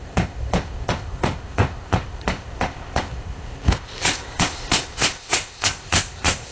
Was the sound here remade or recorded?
remade